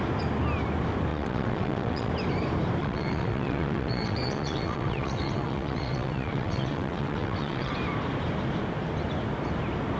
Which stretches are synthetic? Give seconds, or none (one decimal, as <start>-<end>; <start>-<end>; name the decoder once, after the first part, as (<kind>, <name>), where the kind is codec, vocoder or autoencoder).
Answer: 1.1-2.1 (vocoder, WaveNeXt); 2.8-7.7

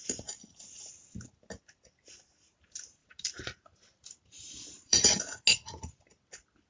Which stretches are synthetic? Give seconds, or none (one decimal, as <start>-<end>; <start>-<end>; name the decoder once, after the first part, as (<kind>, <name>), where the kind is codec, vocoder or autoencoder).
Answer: 3.0-5.2 (vocoder, BigVGAN v2)

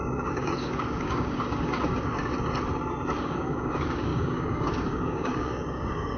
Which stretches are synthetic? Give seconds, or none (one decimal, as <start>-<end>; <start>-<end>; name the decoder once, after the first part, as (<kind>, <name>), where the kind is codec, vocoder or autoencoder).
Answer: 0.0-2.3 (codec, DAC); 3.2-6.2